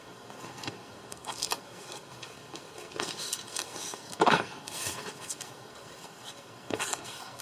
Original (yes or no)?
no